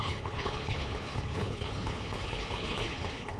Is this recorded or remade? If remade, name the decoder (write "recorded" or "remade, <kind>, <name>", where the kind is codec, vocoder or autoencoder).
remade, codec, HILCodec